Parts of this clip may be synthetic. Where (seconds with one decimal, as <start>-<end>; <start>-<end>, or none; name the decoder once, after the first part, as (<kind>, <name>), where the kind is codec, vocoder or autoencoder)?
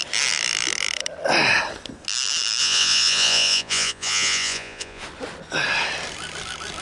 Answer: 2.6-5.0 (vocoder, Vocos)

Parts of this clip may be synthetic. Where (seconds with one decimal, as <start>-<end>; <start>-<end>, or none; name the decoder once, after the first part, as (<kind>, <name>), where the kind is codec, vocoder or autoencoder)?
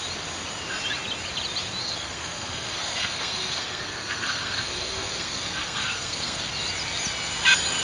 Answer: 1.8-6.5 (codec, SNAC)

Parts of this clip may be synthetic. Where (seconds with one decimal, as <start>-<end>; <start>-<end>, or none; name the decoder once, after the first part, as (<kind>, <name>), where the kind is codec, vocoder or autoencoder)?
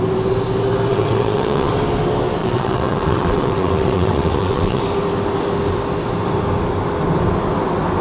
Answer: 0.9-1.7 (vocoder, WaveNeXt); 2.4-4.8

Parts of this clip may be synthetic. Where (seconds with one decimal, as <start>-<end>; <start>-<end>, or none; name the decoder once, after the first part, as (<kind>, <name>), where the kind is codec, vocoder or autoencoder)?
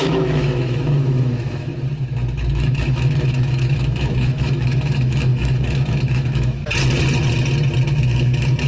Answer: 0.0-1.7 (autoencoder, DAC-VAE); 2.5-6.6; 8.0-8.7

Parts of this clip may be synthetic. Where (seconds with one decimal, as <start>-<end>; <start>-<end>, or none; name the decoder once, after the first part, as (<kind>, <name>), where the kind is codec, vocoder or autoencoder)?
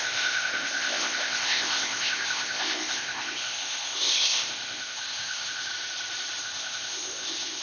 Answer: 0.0-5.7 (codec, ZipCodec); 6.4-7.6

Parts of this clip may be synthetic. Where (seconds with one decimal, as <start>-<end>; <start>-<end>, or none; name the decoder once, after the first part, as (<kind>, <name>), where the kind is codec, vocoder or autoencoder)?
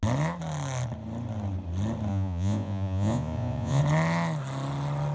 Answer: 2.1-3.8 (vocoder, Vocos)